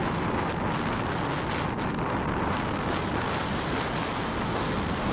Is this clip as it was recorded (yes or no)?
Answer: yes